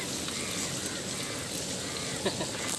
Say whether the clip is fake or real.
real